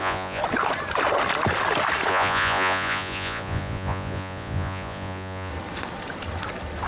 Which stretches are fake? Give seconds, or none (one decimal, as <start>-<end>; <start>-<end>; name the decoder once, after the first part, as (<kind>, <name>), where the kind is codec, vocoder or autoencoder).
0.0-0.4 (vocoder, Vocos); 2.1-5.5